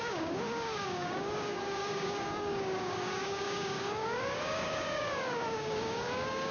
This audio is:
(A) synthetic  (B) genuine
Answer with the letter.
A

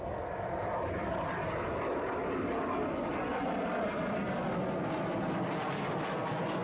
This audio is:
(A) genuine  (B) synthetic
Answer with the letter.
A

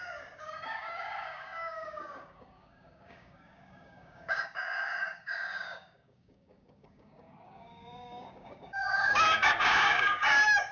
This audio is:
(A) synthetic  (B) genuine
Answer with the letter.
A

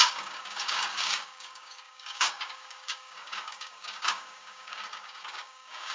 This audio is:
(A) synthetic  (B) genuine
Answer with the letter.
A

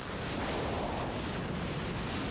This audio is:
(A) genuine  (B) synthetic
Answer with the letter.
A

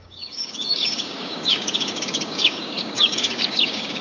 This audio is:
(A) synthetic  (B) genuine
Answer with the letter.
A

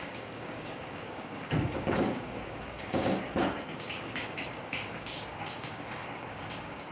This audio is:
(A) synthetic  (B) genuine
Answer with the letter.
A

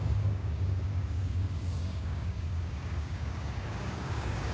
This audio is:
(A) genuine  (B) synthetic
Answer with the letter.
B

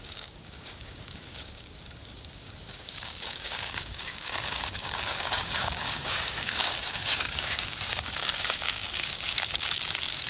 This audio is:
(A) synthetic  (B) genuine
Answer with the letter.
A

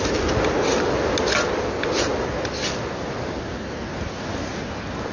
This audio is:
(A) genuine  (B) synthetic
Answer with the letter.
A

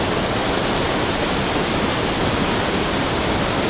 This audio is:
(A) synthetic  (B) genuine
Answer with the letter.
B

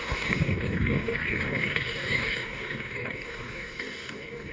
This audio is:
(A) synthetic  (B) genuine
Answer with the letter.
A